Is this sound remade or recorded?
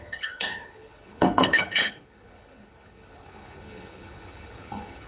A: remade